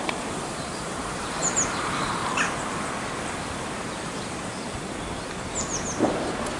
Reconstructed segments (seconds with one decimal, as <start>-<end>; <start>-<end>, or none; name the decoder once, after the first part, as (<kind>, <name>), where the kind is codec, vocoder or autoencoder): 0.0-2.2 (vocoder, BigVGAN v2); 3.2-6.6